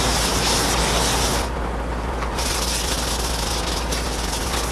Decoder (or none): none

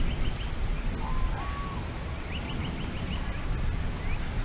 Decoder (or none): none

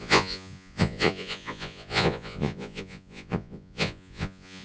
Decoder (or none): vocoder, Vocos